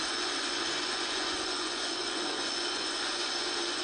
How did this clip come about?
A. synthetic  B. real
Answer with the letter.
A